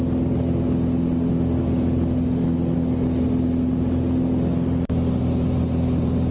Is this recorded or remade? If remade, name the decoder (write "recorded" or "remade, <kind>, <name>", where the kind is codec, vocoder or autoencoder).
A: recorded